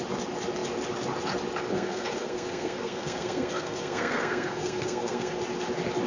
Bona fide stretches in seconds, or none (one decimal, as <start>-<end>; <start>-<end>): 0.0-1.7; 5.4-6.1